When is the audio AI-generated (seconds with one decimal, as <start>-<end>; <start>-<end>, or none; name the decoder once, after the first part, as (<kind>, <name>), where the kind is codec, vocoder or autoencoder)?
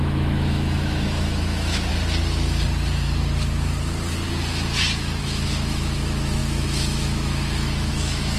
0.0-1.9 (autoencoder, DAC-VAE); 5.2-8.4